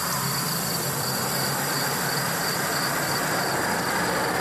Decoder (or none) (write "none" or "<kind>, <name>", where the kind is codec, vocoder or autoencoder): vocoder, BigVGAN v2